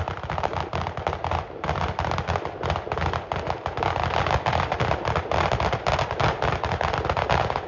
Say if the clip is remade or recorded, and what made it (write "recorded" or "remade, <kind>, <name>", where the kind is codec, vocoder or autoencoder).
recorded